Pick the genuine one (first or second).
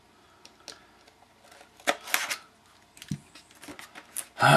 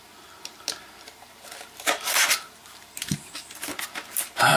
first